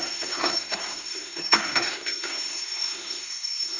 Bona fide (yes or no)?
no